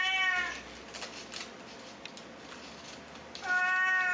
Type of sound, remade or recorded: recorded